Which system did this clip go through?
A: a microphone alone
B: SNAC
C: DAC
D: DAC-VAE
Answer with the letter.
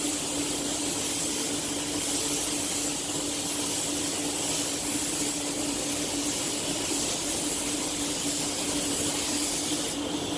A